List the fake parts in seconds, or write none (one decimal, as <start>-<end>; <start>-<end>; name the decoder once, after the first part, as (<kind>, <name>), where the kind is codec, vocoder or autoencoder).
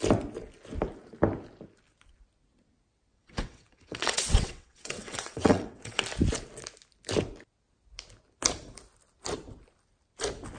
3.1-6.0 (vocoder, WaveNeXt)